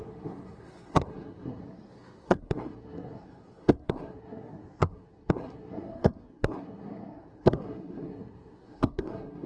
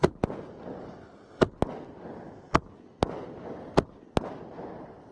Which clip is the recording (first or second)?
second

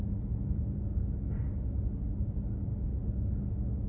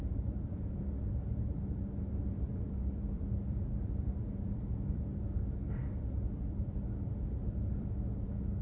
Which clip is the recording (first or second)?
first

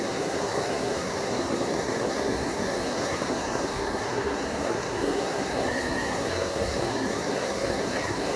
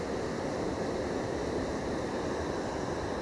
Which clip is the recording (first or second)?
second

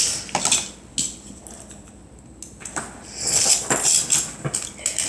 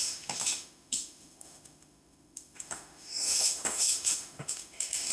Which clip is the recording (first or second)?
first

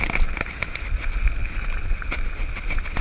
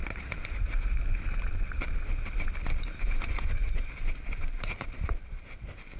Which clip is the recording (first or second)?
first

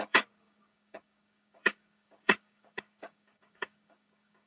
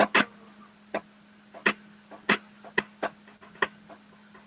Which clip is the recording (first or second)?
second